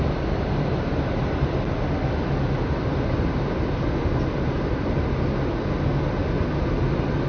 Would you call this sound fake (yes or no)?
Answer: no